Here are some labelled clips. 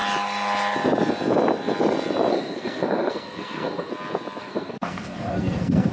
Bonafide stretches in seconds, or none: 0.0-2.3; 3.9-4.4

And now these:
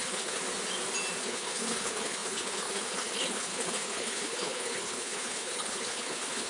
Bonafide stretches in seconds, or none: 0.4-1.2